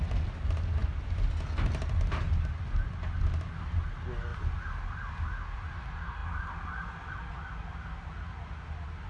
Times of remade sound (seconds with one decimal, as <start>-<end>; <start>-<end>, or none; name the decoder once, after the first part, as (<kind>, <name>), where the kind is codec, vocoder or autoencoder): none